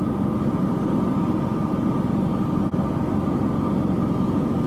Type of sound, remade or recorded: recorded